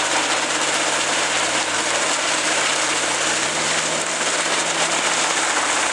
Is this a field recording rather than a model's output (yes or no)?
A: yes